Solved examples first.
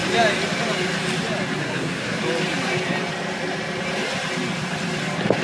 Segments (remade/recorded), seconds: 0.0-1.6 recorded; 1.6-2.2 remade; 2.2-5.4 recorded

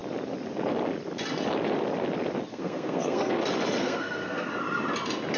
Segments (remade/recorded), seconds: 0.0-2.5 recorded; 2.5-3.4 remade; 3.4-3.8 recorded; 3.8-4.5 remade; 4.5-5.4 recorded

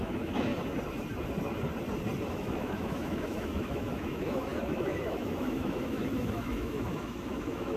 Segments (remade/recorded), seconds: 0.0-0.5 remade; 0.5-2.3 recorded; 2.3-7.8 remade

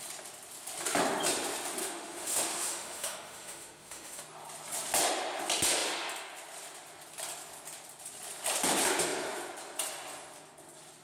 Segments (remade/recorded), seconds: 0.0-1.8 recorded; 1.8-4.2 remade; 4.2-11.0 recorded

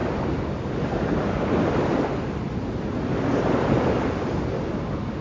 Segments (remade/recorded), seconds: 0.0-5.2 recorded